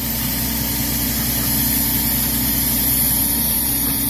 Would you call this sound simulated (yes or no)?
yes